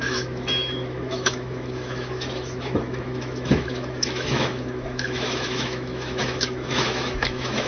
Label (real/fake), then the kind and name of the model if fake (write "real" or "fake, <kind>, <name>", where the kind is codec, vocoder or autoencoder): fake, autoencoder, DAC-VAE